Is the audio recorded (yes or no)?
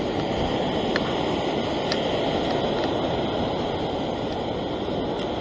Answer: yes